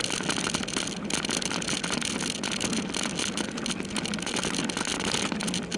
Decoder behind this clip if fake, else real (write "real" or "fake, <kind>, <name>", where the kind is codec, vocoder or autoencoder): real